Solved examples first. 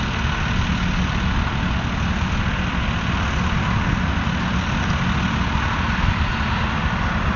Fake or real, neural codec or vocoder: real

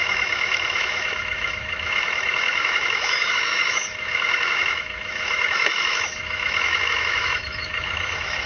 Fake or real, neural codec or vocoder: fake, autoencoder, DAC-VAE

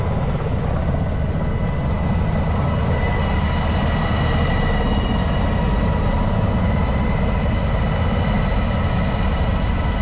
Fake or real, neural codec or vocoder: real